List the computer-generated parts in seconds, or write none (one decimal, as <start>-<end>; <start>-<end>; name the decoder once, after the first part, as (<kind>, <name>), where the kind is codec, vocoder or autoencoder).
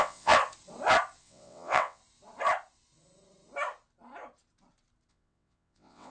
0.0-0.4 (vocoder, WaveNeXt); 1.2-2.0; 5.1-6.1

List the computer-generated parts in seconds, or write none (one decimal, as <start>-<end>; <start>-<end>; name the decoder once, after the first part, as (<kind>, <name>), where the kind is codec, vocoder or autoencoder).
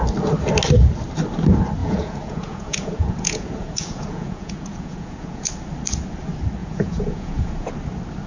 1.8-5.5 (vocoder, Vocos); 6.6-7.7